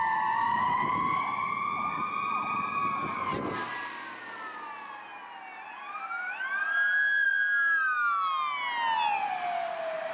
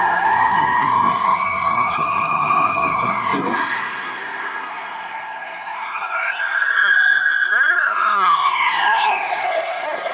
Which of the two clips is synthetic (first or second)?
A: second